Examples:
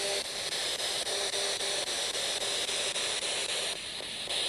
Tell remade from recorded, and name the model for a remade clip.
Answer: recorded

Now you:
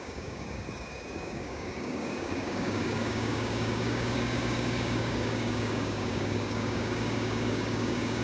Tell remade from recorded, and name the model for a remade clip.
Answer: remade, codec, DAC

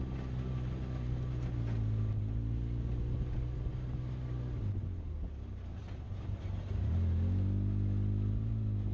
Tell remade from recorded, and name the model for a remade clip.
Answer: recorded